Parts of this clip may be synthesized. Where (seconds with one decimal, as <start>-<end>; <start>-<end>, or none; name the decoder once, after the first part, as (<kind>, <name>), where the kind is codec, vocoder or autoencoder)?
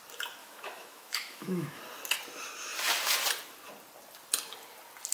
0.4-1.8 (autoencoder, DAC-VAE)